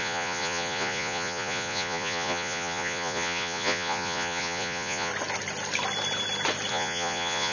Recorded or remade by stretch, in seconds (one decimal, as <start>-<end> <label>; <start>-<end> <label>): 0.0-5.1 remade; 5.1-6.7 recorded; 6.7-7.5 remade